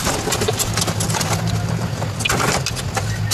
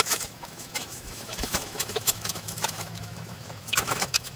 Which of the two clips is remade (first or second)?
second